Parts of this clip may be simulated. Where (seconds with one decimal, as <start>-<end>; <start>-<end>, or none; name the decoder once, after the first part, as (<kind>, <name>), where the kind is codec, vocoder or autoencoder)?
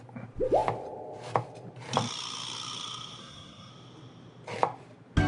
3.2-3.7 (codec, SNAC)